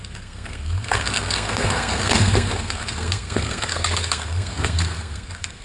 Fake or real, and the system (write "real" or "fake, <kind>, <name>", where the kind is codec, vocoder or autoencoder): fake, codec, SNAC